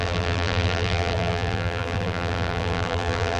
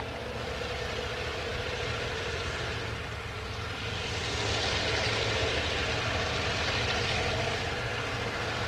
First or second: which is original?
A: second